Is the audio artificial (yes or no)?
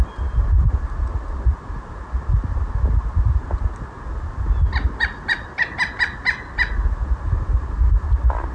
no